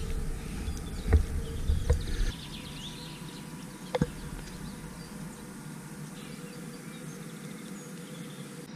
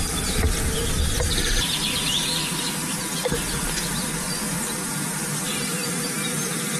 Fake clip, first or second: second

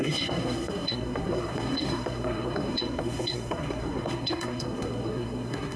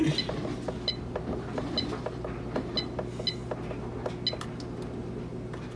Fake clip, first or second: first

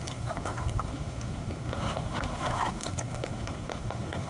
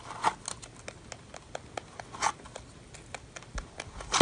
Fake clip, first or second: first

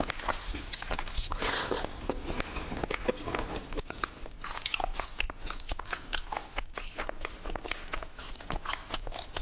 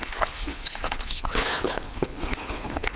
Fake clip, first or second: second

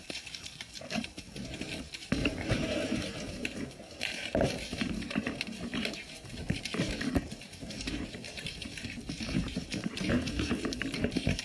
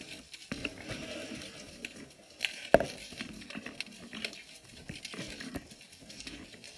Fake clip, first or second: first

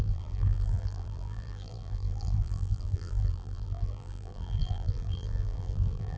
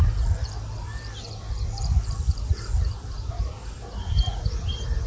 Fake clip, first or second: first